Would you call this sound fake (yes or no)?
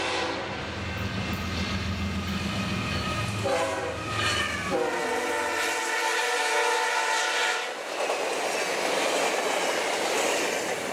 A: no